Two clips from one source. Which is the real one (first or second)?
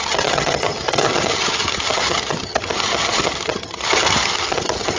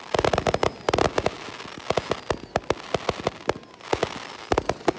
second